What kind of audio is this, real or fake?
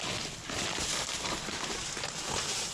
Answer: real